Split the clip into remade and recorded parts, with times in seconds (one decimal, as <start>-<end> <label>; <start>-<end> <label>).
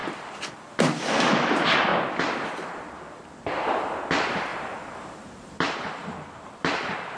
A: 0.0-4.5 recorded; 4.5-5.5 remade; 5.5-7.2 recorded